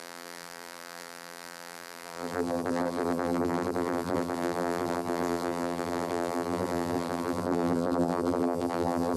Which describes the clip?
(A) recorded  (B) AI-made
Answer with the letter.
B